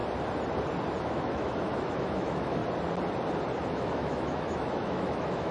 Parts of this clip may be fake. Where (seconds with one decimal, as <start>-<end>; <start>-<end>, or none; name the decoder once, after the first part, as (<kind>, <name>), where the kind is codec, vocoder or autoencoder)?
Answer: 1.0-2.6 (autoencoder, DAC-VAE); 3.7-5.5